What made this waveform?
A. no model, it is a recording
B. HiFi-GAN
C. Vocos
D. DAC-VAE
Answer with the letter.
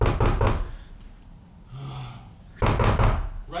A